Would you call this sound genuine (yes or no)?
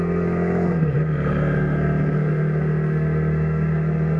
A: no